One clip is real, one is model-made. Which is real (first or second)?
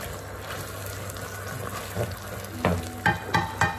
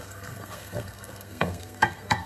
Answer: first